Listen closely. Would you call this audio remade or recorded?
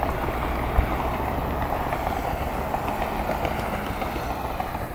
recorded